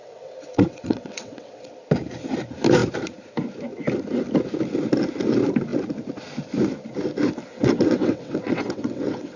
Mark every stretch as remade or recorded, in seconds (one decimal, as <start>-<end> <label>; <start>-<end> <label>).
0.0-1.7 remade; 1.7-7.5 recorded; 7.5-9.4 remade